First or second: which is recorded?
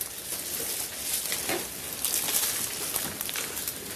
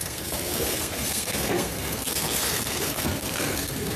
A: first